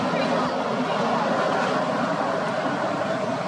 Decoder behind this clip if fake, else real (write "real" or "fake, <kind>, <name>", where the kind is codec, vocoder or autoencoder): real